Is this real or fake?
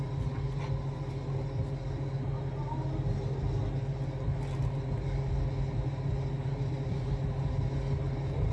real